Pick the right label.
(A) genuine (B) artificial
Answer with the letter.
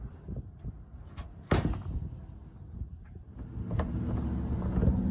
A